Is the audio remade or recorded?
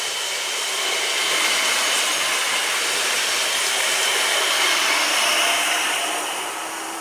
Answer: remade